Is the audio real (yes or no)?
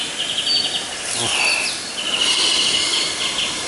yes